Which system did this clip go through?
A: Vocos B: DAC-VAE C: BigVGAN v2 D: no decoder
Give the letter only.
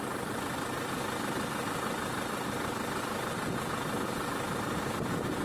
D